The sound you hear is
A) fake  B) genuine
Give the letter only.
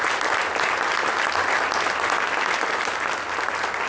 B